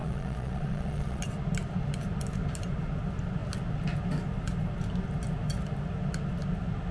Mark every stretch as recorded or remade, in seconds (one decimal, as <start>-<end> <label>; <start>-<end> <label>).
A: 0.0-1.2 remade; 1.2-6.9 recorded